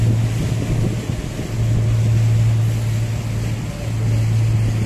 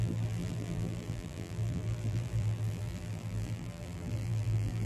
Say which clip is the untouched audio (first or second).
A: first